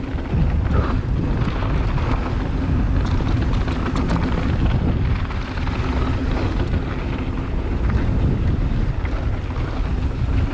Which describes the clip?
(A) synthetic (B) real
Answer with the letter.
B